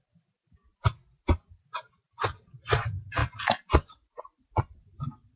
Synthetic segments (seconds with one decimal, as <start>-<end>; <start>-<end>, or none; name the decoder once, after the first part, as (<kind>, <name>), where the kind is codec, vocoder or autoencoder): none